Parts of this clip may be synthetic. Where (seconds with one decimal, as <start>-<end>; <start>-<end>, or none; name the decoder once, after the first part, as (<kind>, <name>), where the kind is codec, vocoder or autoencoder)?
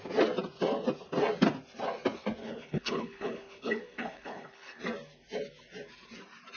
2.4-4.8 (codec, HILCodec)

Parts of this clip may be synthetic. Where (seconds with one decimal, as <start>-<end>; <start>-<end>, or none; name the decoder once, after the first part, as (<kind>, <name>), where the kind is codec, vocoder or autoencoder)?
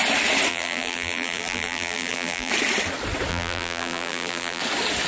0.5-2.5 (vocoder, BigVGAN v2); 3.3-4.6